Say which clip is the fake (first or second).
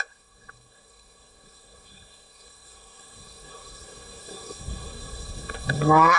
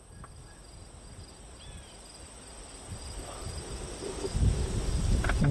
first